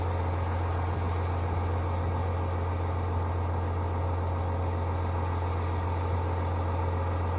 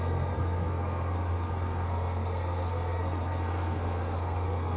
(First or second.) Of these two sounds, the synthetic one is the second